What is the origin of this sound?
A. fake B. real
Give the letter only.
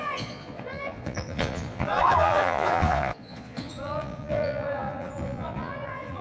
A